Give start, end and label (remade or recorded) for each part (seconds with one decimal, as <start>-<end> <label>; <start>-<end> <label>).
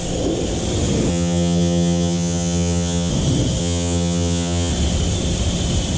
0.0-1.1 recorded; 1.1-3.1 remade; 3.1-3.6 recorded; 3.6-4.7 remade; 4.7-6.0 recorded